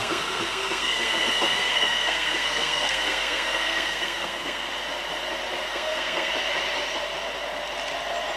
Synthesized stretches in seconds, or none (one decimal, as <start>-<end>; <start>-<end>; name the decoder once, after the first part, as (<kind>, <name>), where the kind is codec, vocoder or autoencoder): 0.0-4.7 (codec, SNAC); 5.7-6.3